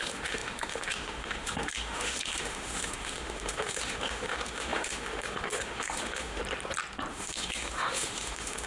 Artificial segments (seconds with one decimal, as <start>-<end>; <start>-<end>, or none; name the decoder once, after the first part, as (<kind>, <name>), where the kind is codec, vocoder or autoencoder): 0.0-6.4 (autoencoder, DAC-VAE); 7.1-8.7